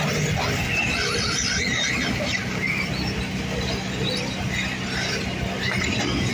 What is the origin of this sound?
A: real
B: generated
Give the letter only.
A